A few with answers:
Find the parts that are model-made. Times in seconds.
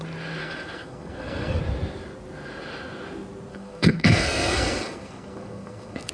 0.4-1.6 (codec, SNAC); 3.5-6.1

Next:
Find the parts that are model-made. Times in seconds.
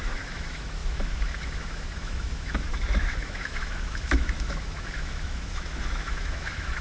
0.0-6.8 (autoencoder, DAC-VAE)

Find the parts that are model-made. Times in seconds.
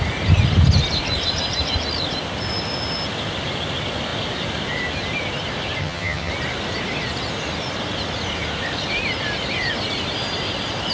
5.8-6.3 (vocoder, HiFi-GAN)